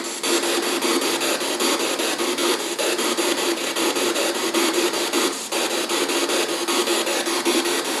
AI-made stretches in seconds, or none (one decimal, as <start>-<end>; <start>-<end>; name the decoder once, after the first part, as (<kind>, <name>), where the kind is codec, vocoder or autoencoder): 2.4-5.7 (vocoder, BigVGAN v2)